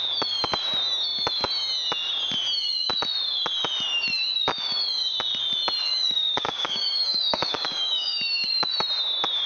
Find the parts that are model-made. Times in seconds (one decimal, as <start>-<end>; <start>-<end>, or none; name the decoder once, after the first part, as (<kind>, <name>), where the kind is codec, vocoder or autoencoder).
6.0-8.2 (codec, DAC)